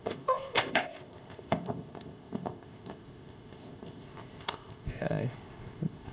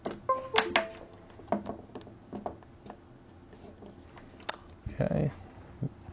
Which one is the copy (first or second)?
first